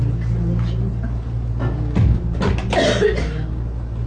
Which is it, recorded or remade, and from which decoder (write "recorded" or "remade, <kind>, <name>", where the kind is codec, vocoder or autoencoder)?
recorded